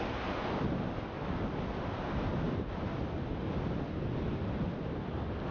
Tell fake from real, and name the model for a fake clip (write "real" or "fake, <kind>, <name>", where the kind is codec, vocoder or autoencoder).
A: real